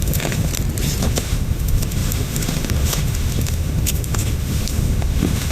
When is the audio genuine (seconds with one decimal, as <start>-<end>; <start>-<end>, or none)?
0.5-1.0